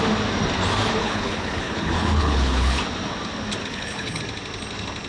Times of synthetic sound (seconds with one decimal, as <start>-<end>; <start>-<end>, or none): 1.0-2.8; 3.6-4.2